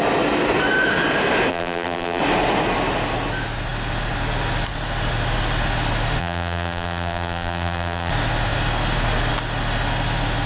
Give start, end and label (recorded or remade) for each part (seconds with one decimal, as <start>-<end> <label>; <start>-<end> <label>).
0.0-1.5 recorded; 1.5-2.2 remade; 2.2-6.2 recorded; 6.2-8.1 remade; 8.1-10.5 recorded